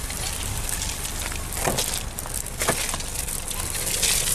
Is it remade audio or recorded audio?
recorded